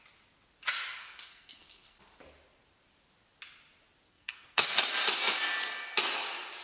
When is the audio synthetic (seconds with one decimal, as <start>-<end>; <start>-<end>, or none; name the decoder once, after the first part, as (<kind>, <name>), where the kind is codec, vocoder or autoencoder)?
1.0-2.0 (codec, SNAC); 4.1-4.8